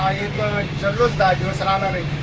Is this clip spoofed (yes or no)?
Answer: yes